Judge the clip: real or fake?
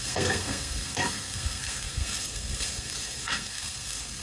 fake